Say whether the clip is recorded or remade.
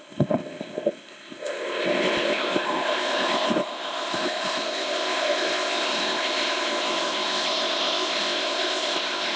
remade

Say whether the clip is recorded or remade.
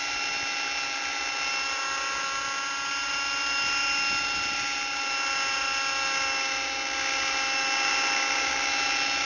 recorded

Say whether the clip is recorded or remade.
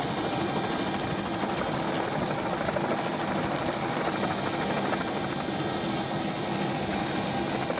recorded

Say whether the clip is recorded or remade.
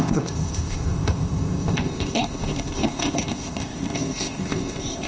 remade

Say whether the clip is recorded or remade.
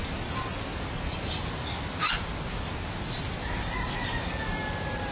recorded